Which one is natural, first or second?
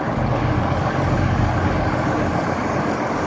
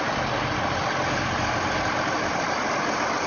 second